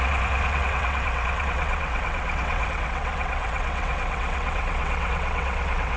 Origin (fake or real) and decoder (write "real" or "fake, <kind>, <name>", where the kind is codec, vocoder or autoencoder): fake, vocoder, WaveNeXt